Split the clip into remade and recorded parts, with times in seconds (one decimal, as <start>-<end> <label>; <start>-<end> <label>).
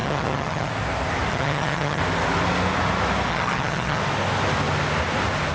0.0-0.7 remade; 0.7-1.3 recorded; 1.3-2.0 remade; 2.0-3.3 recorded; 3.3-4.0 remade; 4.0-5.5 recorded